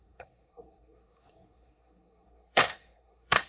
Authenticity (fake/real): fake